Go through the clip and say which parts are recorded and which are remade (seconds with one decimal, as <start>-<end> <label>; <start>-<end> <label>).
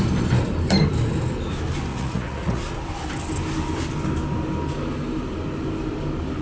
0.0-1.9 recorded; 1.9-2.6 remade; 2.6-6.4 recorded